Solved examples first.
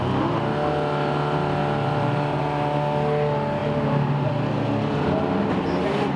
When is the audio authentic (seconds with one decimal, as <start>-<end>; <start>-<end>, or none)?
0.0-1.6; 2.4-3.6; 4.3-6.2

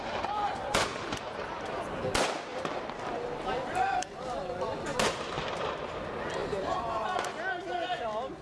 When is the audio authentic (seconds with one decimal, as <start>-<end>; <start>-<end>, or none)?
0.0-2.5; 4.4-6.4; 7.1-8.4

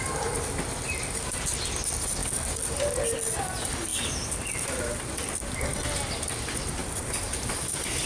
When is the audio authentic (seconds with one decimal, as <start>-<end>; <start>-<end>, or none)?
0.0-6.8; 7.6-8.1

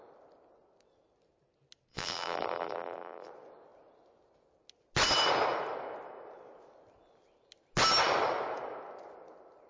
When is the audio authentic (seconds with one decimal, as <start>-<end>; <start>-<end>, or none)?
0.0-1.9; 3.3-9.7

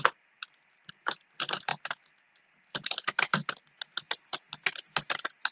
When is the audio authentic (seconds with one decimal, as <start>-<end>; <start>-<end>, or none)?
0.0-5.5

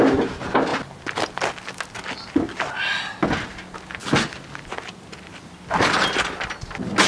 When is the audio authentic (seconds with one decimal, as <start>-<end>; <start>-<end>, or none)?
0.0-0.7; 1.5-7.1

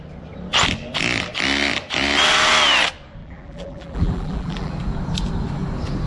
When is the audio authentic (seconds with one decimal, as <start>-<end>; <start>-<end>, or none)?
0.0-3.2; 4.7-6.1

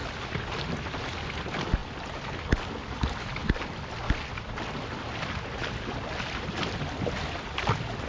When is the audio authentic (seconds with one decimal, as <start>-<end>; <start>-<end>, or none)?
0.0-8.1